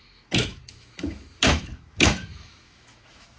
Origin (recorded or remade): remade